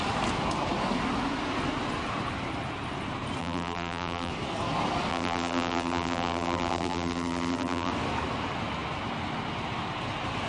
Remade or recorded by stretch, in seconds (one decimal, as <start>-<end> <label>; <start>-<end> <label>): 0.0-3.4 recorded; 3.4-4.3 remade; 4.3-5.1 recorded; 5.1-7.9 remade; 7.9-10.5 recorded